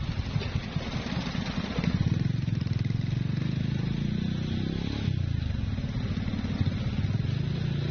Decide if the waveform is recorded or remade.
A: recorded